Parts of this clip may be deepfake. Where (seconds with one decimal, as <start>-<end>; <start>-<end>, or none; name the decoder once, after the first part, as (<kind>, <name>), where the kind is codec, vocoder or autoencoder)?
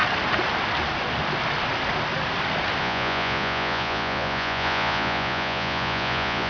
2.8-6.5 (vocoder, Vocos)